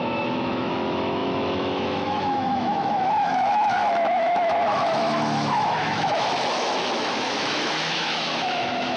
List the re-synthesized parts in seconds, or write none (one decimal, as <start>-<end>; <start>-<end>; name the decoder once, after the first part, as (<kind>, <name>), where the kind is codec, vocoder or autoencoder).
0.0-9.0 (autoencoder, DAC-VAE)